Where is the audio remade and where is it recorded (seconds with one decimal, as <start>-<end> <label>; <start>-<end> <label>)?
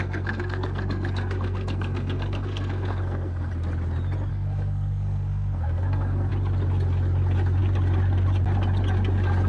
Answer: 0.0-3.5 remade; 3.5-4.3 recorded; 4.3-6.3 remade; 6.3-9.5 recorded